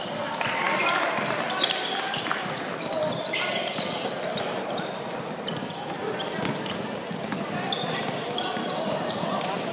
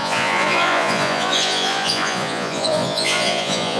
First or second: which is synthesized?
second